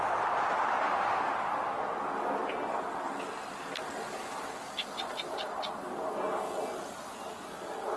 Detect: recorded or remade recorded